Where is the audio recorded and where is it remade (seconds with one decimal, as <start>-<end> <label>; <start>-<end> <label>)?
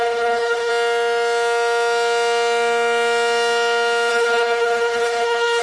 0.0-0.7 remade; 0.7-4.1 recorded; 4.1-5.6 remade